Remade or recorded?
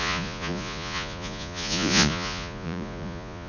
remade